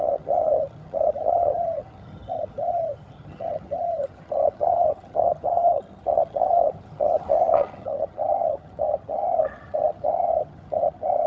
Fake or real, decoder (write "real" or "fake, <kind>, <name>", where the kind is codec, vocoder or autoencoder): fake, vocoder, HiFi-GAN